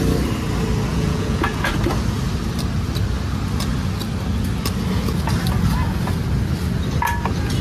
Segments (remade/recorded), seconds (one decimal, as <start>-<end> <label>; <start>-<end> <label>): 0.0-0.9 recorded; 0.9-1.8 remade; 1.8-7.6 recorded